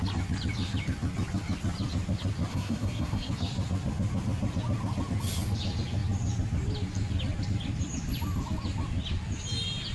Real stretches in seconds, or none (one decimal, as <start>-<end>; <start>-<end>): 0.0-2.5; 3.3-9.9

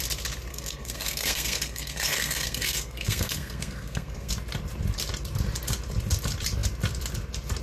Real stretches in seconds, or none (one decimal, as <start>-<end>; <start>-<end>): 0.0-0.5; 4.3-7.6

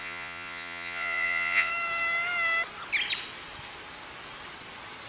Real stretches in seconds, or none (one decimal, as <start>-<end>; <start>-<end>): 1.7-5.1

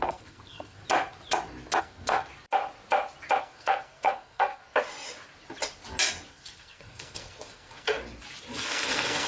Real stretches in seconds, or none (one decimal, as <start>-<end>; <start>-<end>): 0.8-1.8; 2.3-3.4; 4.6-6.3; 8.0-8.5